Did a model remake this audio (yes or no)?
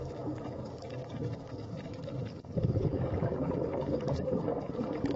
yes